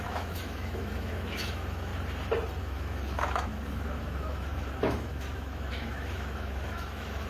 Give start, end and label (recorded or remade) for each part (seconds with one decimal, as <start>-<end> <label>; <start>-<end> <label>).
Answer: 0.0-1.9 remade; 1.9-2.6 recorded; 2.6-7.3 remade